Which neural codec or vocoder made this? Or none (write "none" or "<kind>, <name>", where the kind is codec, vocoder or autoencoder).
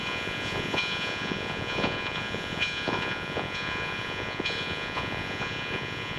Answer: vocoder, Vocos